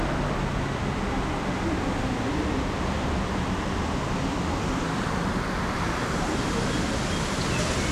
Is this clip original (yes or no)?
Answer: yes